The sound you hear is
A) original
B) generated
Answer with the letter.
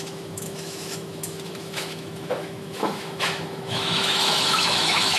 B